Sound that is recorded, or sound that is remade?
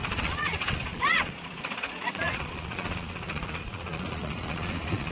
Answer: remade